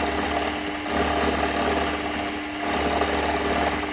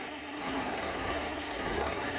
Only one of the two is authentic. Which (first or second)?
first